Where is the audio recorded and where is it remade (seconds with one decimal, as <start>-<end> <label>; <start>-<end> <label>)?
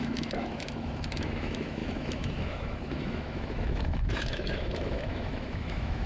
0.0-6.1 remade